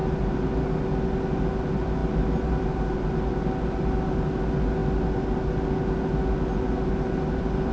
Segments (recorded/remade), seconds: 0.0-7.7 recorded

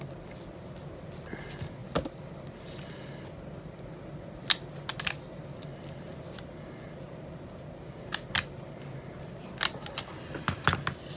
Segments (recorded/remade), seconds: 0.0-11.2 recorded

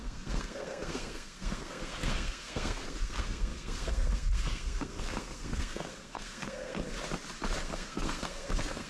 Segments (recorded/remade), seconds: 0.0-6.9 remade; 6.9-7.6 recorded; 7.6-8.9 remade

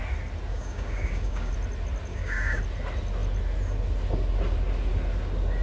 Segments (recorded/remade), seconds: 0.0-0.5 recorded; 0.5-1.5 remade; 1.5-2.1 recorded; 2.1-2.6 remade; 2.6-5.6 recorded

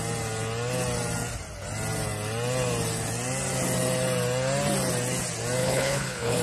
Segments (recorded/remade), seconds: 0.0-5.6 recorded; 5.6-6.4 remade

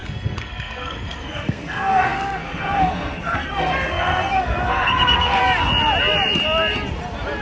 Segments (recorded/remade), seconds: 0.0-5.4 remade; 5.4-7.4 recorded

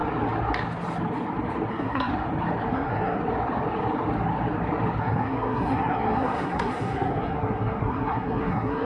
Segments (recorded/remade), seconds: 0.0-1.7 recorded; 1.7-2.1 remade; 2.1-2.7 recorded; 2.7-3.2 remade; 3.2-5.0 recorded; 5.0-8.8 remade